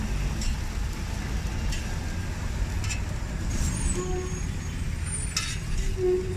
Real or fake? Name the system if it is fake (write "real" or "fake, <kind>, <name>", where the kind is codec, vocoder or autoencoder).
real